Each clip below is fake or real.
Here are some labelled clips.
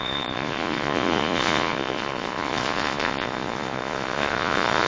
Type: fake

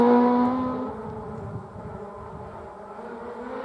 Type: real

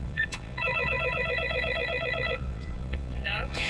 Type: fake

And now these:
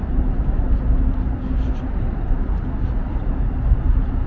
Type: real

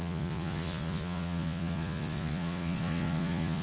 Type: fake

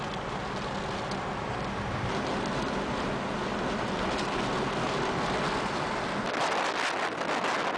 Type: real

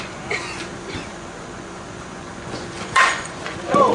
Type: fake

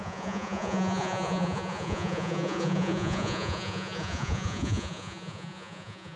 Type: fake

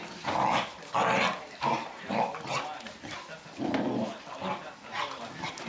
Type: real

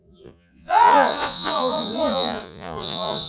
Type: fake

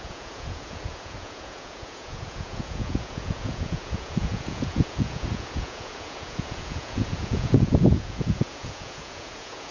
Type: fake